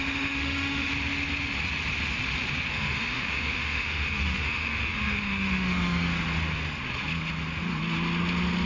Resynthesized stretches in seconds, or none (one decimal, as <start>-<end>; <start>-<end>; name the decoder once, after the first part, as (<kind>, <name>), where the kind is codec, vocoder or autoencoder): 0.0-0.9 (autoencoder, DAC-VAE); 2.7-6.1